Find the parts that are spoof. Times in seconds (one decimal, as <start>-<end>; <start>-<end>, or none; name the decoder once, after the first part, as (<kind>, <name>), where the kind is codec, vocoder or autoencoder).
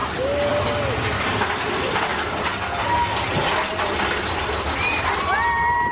none